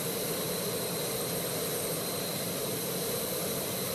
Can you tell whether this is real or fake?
fake